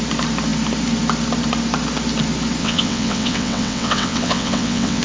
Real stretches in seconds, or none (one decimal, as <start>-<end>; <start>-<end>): 0.0-2.6